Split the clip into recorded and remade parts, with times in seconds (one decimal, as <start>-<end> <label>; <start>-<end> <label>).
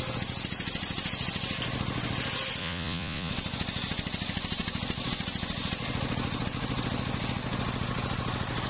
0.0-2.6 recorded; 2.6-3.3 remade; 3.3-8.7 recorded